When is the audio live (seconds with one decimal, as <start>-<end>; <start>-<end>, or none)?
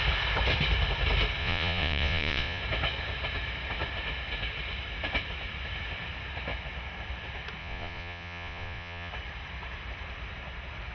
0.0-1.4; 2.6-7.6; 9.1-10.9